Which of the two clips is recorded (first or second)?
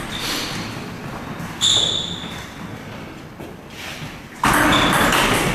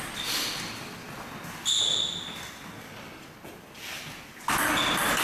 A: second